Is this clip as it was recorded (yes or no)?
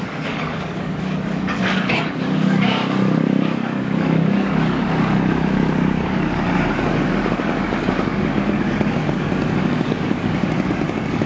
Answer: no